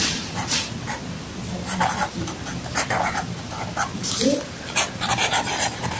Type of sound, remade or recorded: recorded